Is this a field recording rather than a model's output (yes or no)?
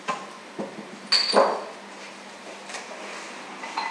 yes